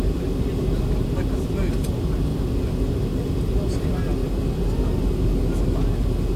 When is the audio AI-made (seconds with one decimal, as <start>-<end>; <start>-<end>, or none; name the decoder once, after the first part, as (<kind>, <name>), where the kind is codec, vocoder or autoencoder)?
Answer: none